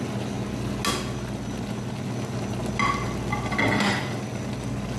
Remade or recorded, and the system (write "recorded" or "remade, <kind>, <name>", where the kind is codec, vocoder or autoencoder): recorded